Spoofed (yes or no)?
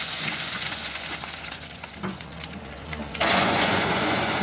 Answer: yes